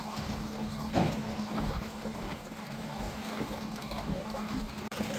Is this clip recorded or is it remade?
remade